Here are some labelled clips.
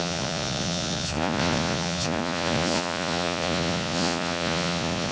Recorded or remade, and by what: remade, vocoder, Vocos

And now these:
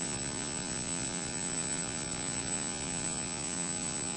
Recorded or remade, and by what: remade, vocoder, Vocos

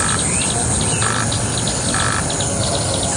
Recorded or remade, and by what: recorded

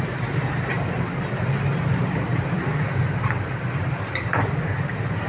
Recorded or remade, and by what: recorded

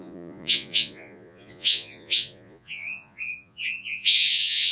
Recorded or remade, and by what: remade, vocoder, Vocos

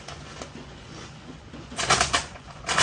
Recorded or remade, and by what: remade, vocoder, Vocos